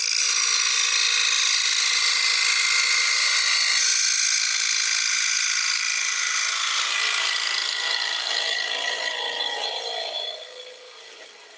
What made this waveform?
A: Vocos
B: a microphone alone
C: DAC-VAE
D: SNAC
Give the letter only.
B